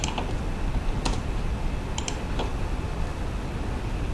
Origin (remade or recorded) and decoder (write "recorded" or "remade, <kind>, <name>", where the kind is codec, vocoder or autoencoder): recorded